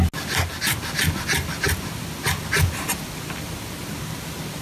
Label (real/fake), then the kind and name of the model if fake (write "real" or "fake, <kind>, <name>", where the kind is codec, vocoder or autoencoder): real